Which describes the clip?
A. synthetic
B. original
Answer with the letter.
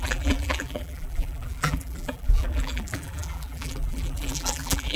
A